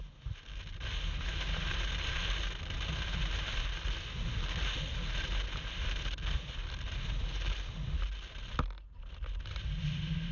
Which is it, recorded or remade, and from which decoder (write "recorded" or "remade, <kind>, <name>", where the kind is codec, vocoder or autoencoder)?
recorded